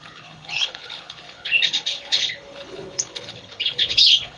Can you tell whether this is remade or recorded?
remade